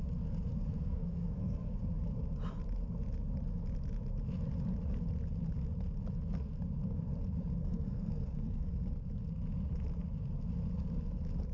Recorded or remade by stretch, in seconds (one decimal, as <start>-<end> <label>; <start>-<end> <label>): 0.0-0.5 recorded; 0.5-1.8 remade; 1.8-7.6 recorded; 7.6-8.7 remade; 8.7-11.5 recorded